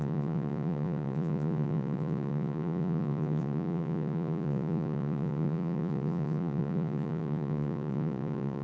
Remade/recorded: remade